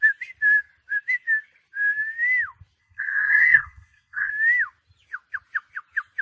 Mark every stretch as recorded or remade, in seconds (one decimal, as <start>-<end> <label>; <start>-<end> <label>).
0.0-2.8 recorded; 2.8-4.3 remade; 4.3-6.2 recorded